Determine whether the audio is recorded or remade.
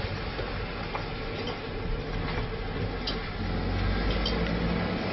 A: recorded